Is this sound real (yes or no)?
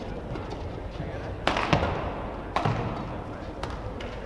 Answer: yes